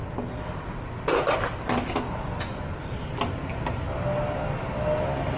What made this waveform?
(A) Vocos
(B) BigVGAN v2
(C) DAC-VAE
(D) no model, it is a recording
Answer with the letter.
D